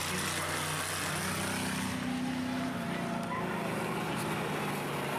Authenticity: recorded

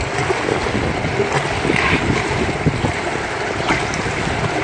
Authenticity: recorded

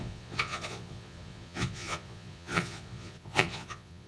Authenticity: remade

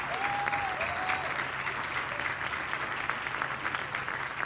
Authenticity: recorded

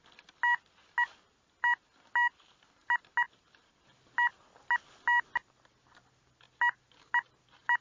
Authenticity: recorded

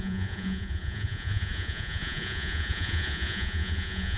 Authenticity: remade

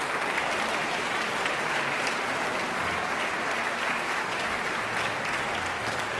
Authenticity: recorded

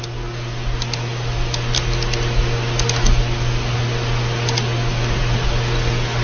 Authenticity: recorded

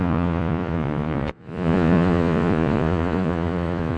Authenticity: remade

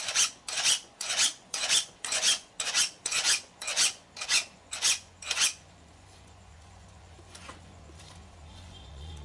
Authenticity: remade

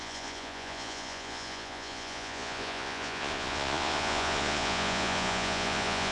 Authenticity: remade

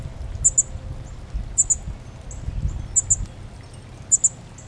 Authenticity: recorded